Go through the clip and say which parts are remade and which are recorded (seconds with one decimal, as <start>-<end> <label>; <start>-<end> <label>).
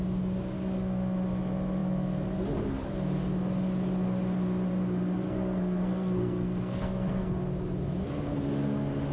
0.0-5.2 recorded; 5.2-7.3 remade; 7.3-9.1 recorded